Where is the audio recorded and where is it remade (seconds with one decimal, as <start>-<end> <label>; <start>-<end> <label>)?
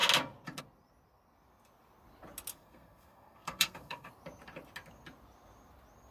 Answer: 0.0-2.5 recorded; 2.5-4.1 remade; 4.1-6.1 recorded